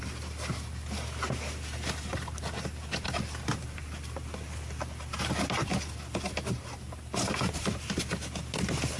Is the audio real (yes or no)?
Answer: yes